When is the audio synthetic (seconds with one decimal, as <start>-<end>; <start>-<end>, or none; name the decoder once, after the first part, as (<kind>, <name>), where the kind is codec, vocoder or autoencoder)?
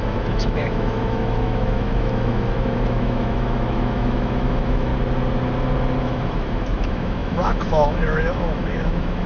0.0-4.9 (autoencoder, DAC-VAE); 6.0-9.3